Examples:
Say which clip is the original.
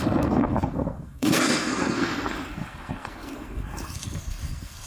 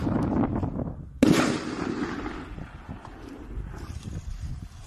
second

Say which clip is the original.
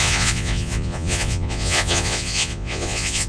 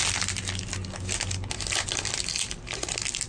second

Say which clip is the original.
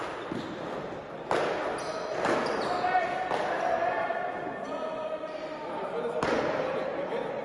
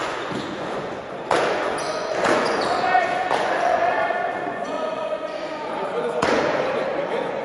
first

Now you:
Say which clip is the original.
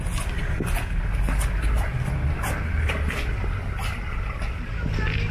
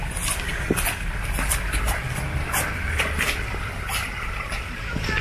first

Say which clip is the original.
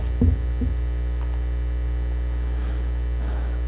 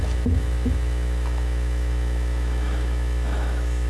first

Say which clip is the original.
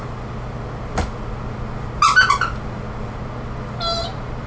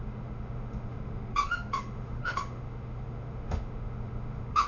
first